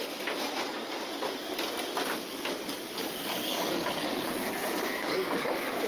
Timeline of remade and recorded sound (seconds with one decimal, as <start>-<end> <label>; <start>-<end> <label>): 0.0-3.0 recorded; 3.0-3.7 remade; 3.7-4.9 recorded; 4.9-5.9 remade